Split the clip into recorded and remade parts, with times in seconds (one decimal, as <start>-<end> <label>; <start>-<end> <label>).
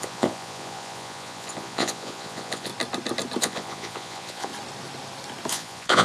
0.0-2.7 remade; 2.7-3.4 recorded; 3.4-4.5 remade; 4.5-5.5 recorded; 5.5-6.0 remade